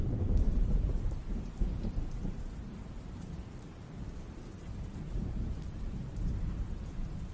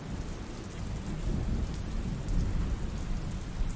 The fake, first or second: first